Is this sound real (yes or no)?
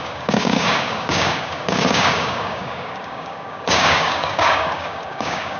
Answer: no